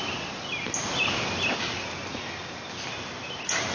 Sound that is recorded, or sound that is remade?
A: recorded